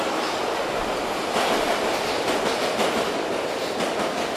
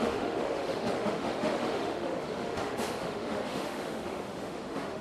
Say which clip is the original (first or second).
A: first